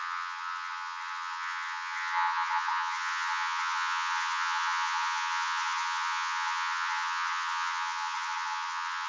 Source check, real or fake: fake